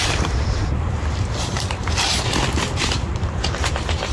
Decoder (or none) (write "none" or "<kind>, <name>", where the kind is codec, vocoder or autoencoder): vocoder, BigVGAN v2